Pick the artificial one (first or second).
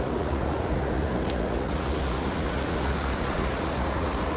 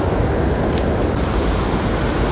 first